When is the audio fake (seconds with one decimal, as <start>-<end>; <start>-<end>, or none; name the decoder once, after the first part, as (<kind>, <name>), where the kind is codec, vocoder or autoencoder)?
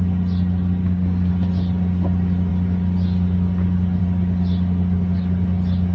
0.8-1.3 (codec, DAC)